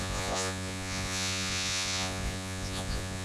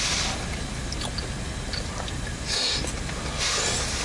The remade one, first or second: first